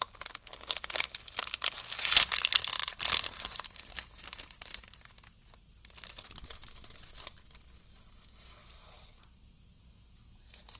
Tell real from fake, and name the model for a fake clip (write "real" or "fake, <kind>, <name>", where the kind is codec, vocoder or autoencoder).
real